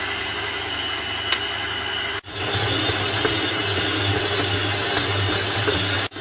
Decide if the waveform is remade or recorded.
recorded